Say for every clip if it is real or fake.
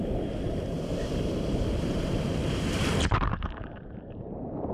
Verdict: fake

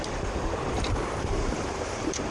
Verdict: fake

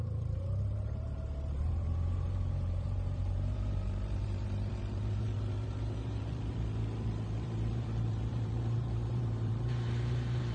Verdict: fake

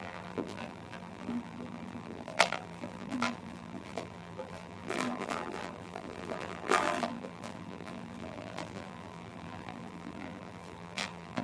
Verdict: fake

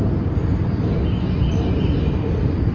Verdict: real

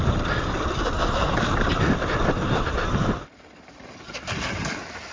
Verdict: fake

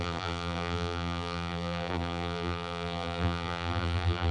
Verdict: fake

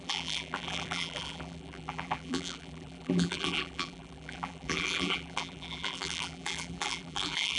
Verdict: fake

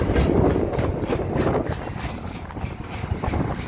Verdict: real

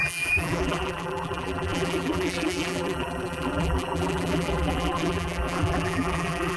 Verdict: fake